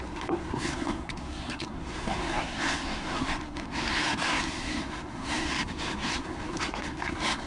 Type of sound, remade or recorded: remade